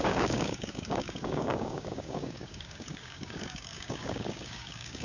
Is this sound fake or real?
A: fake